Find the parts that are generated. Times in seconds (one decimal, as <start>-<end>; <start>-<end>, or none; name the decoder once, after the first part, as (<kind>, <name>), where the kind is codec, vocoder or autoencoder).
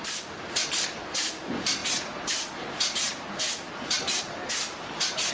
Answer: 0.0-5.3 (vocoder, BigVGAN v2)